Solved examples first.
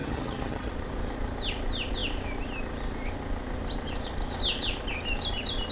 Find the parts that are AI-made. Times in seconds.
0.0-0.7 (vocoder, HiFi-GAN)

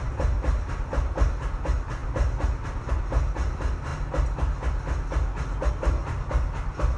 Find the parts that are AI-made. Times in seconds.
none

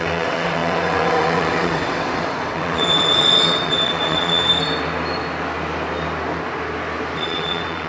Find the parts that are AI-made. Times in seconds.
0.0-4.4 (vocoder, WaveNeXt); 7.2-7.9

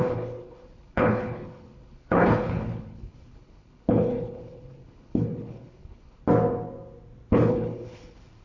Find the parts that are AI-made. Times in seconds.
0.0-6.2 (codec, HILCodec); 7.3-8.4

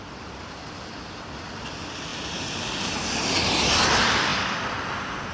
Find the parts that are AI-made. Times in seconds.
none

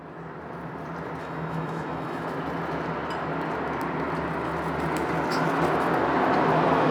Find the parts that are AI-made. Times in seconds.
1.2-2.2 (autoencoder, DAC-VAE)

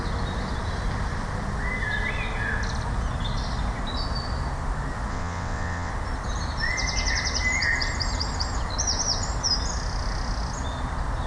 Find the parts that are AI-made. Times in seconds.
5.1-5.9 (vocoder, WaveNeXt)

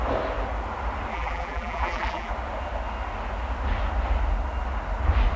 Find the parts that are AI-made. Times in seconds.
1.1-2.3 (vocoder, BigVGAN v2)